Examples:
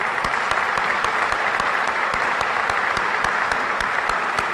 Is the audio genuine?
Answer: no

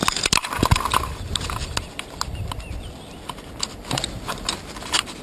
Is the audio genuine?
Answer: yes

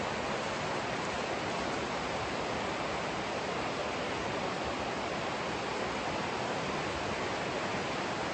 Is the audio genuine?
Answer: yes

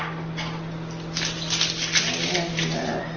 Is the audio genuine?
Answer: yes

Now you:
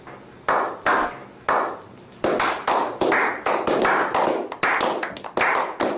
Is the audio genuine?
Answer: yes